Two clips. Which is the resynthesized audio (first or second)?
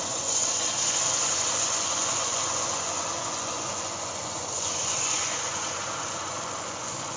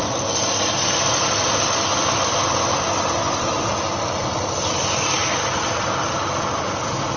first